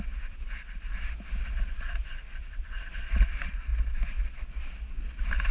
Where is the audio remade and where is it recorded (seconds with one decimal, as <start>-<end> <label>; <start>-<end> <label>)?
0.0-2.4 recorded; 2.4-2.9 remade; 2.9-5.5 recorded